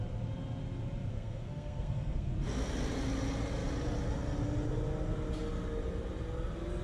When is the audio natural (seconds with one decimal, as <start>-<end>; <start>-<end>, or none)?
0.0-1.1; 2.3-6.8